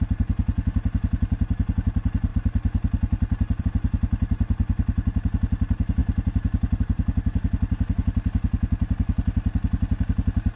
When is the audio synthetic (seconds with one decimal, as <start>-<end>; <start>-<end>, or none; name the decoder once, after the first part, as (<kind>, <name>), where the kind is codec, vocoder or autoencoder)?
none